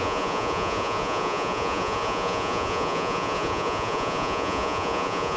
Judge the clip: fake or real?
fake